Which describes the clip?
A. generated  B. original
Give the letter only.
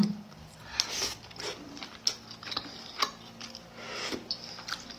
B